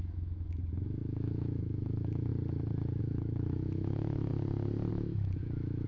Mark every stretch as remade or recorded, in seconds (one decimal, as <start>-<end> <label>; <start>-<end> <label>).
0.0-2.3 remade; 2.3-3.0 recorded; 3.0-4.3 remade; 4.3-4.9 recorded; 4.9-5.9 remade